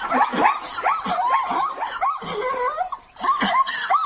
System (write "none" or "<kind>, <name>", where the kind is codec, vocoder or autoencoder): none